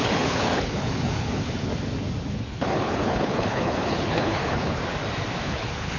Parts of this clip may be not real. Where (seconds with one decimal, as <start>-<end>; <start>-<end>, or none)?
0.0-1.7; 2.3-4.8; 5.4-6.0